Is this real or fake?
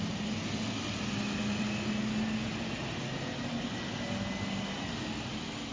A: real